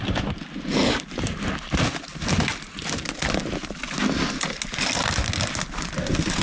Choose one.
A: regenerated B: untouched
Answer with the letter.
B